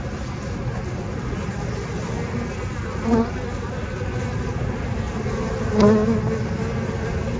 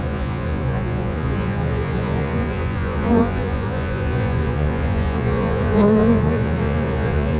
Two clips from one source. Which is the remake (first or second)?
second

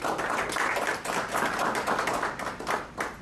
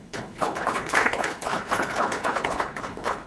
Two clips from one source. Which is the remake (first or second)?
second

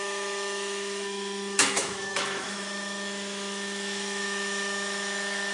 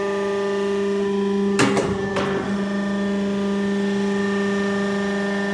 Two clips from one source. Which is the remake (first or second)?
first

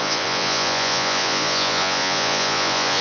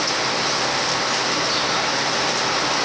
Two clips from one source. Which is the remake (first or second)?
first